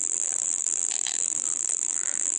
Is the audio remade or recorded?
remade